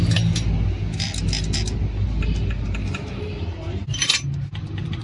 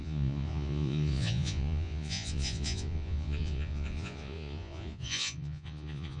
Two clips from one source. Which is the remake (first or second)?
second